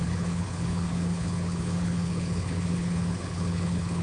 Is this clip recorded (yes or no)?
no